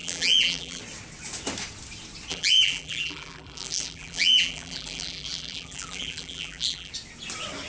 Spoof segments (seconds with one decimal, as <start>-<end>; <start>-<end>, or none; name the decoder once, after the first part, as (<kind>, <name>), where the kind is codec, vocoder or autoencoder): 0.0-0.8 (vocoder, BigVGAN v2); 2.3-6.9